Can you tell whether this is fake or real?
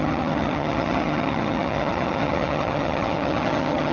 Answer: fake